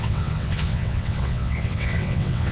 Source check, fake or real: fake